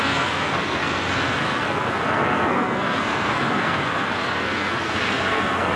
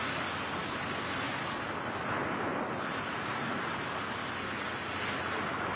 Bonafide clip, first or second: second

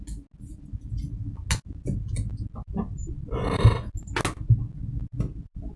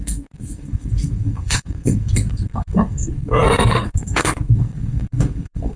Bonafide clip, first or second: first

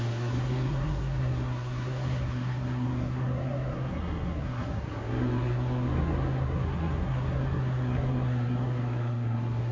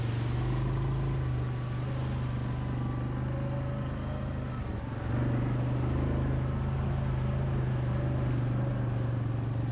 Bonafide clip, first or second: second